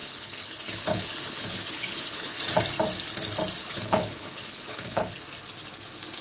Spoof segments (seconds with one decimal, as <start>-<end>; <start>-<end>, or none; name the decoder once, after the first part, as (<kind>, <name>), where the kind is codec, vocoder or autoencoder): 0.0-2.4 (codec, HILCodec); 3.6-5.2

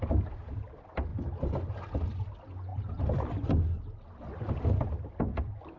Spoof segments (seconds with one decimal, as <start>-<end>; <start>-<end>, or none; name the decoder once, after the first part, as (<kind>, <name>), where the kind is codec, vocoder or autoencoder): none

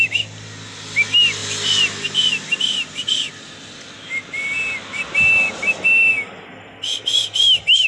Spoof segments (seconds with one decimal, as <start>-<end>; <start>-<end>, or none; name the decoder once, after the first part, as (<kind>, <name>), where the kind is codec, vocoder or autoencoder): none